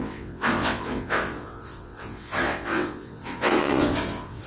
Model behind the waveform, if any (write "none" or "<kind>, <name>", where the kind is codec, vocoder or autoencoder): vocoder, WaveNeXt